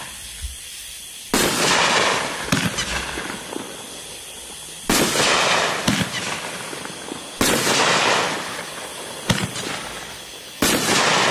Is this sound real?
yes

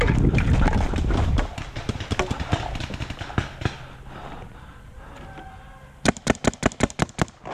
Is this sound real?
yes